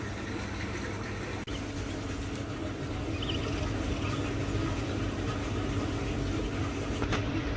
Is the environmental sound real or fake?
real